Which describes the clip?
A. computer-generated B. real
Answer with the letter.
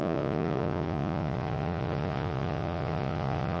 A